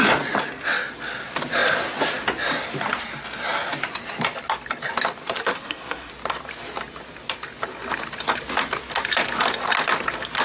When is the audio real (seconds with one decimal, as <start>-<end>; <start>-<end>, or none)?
0.0-5.4; 6.1-10.4